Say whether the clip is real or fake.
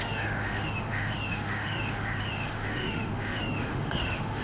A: fake